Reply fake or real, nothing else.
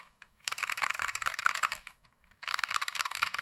fake